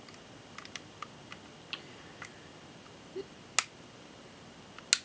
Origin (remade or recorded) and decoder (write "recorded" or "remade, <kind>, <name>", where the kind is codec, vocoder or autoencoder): recorded